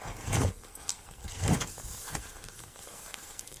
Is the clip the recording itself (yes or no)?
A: no